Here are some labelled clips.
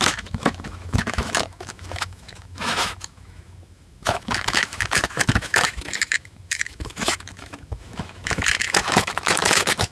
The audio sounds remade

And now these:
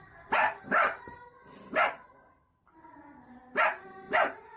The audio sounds recorded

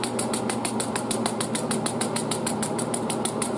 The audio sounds recorded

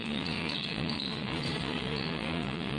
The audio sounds remade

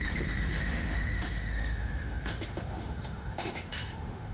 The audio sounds remade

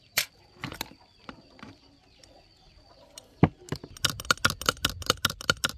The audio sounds recorded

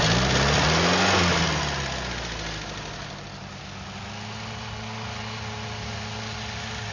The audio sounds recorded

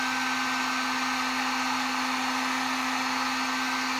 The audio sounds recorded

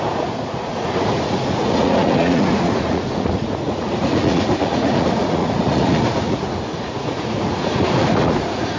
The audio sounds remade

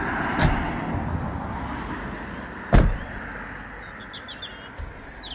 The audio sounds recorded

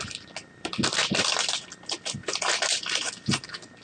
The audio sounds recorded